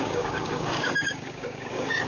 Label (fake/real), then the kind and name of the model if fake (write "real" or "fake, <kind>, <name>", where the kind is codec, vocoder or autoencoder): fake, codec, DAC